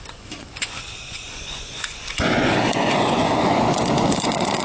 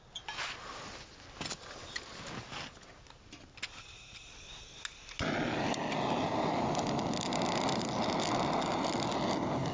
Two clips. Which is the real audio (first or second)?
second